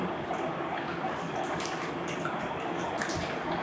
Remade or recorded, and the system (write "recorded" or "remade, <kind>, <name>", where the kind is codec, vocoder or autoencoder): remade, codec, DAC